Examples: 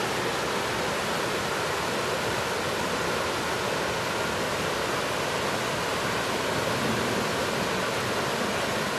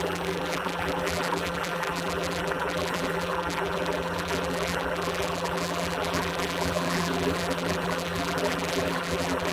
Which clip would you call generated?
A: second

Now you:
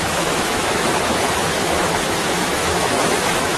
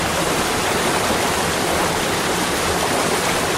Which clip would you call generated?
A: first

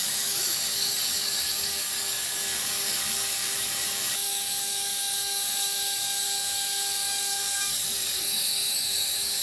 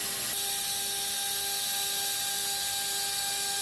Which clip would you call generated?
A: first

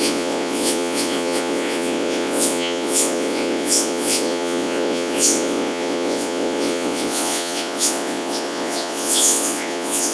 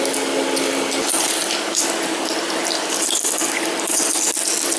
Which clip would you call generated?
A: first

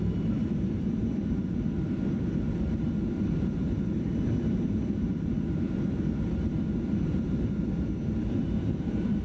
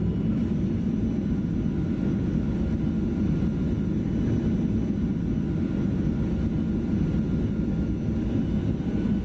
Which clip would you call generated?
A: first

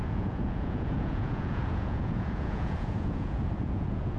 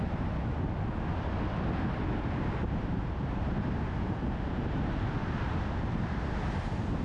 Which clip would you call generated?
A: first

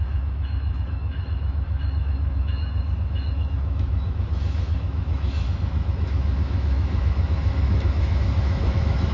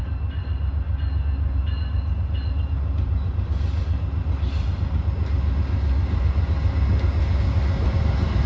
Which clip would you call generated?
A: first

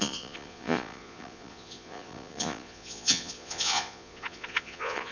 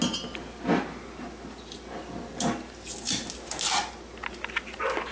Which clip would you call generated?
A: first